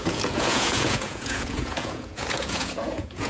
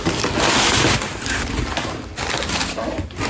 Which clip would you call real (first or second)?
second